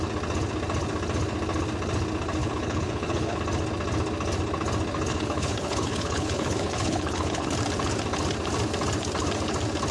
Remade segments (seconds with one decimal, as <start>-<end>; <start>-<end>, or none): 2.4-3.4; 5.1-7.5